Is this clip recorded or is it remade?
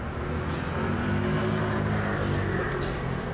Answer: recorded